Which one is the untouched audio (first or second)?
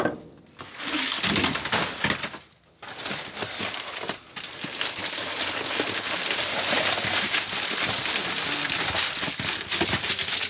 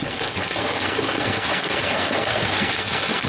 first